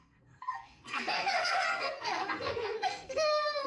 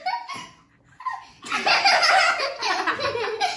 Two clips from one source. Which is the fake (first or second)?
first